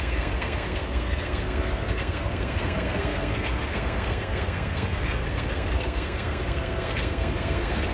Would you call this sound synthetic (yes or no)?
yes